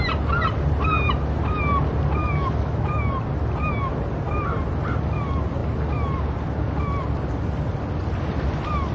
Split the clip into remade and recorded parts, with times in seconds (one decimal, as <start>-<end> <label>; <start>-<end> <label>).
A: 0.0-2.2 recorded; 2.2-2.9 remade; 2.9-8.9 recorded